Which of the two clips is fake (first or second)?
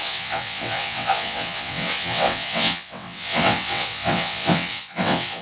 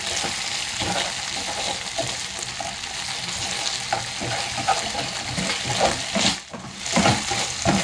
first